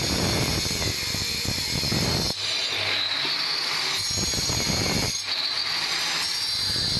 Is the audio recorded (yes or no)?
yes